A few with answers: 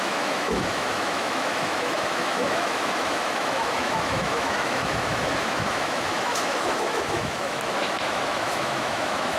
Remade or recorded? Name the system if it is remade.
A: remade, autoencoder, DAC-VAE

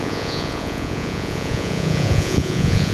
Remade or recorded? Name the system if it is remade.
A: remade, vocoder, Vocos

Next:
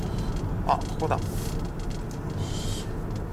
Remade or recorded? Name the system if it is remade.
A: recorded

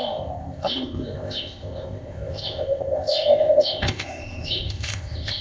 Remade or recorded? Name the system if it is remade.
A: remade, codec, ZipCodec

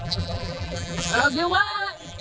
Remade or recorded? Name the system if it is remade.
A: remade, vocoder, BigVGAN v2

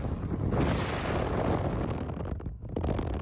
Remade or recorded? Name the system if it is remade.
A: recorded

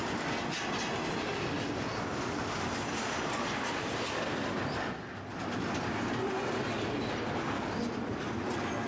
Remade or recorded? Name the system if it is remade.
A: recorded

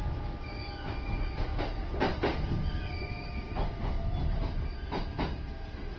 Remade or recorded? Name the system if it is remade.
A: recorded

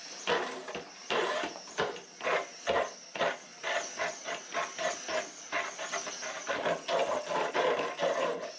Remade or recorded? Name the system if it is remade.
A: recorded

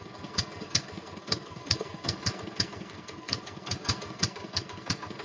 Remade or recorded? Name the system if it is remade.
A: remade, codec, SNAC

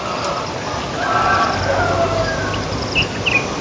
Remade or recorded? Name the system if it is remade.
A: recorded